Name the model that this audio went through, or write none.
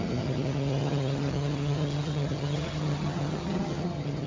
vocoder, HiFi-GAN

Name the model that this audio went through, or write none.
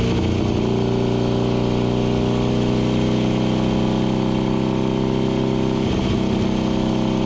none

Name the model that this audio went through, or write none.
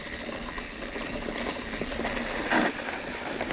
none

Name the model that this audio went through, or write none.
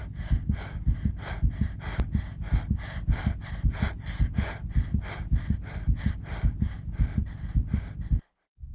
none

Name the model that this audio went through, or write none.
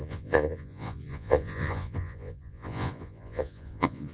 vocoder, Vocos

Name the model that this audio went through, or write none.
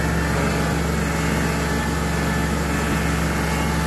none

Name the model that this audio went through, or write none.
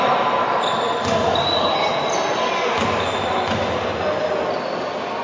none